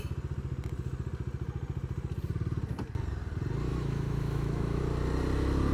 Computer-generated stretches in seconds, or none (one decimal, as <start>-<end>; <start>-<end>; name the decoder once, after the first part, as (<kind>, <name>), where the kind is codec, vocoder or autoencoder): 3.7-4.8 (autoencoder, DAC-VAE)